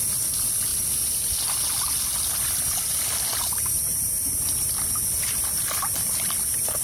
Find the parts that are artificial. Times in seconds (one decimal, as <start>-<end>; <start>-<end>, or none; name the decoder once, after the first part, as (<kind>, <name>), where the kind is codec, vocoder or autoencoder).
3.3-4.4 (vocoder, BigVGAN v2)

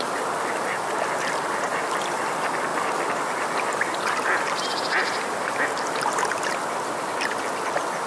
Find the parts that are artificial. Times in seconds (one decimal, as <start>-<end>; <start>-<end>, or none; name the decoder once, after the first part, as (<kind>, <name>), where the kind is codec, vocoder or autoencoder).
2.7-7.4 (vocoder, BigVGAN v2)

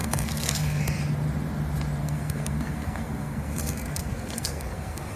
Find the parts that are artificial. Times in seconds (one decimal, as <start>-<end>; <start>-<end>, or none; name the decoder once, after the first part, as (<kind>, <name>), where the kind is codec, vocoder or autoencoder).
0.0-1.0 (codec, SNAC); 2.0-5.2

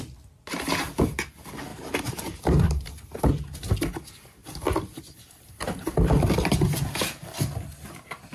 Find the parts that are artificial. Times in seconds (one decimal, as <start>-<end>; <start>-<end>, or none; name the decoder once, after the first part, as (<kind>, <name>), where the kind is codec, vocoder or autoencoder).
1.7-2.9 (vocoder, BigVGAN v2); 4.4-5.5

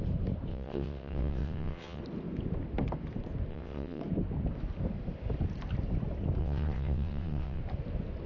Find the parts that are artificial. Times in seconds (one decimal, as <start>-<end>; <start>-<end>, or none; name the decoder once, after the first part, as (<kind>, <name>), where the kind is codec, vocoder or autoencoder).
0.5-2.0 (vocoder, WaveNeXt); 3.5-4.0; 6.4-7.6